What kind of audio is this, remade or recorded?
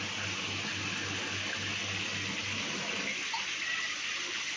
recorded